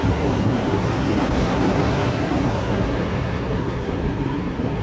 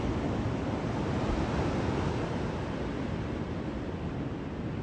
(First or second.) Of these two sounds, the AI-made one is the first